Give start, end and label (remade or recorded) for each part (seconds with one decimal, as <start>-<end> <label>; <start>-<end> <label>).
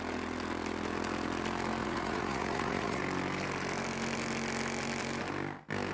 0.0-1.8 recorded; 1.8-3.0 remade; 3.0-5.9 recorded